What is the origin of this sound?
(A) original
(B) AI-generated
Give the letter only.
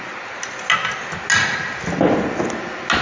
A